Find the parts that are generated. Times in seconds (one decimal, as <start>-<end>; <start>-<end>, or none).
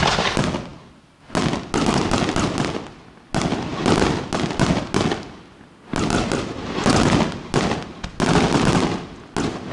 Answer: none